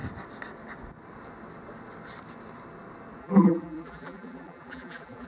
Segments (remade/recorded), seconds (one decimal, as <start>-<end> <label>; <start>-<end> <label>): 0.0-3.2 recorded; 3.2-5.3 remade